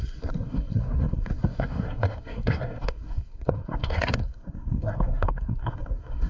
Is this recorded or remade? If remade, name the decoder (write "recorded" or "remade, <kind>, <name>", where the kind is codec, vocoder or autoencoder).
remade, codec, SNAC